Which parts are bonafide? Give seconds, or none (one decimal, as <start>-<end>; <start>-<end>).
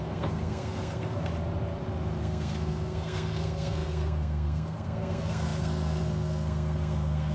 1.3-2.2